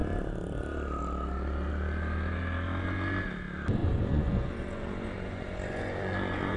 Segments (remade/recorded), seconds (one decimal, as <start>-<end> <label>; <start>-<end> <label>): 0.0-3.8 recorded; 3.8-6.6 remade